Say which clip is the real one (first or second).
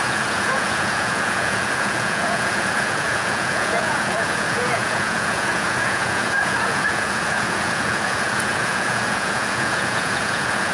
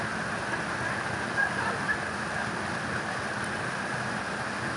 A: second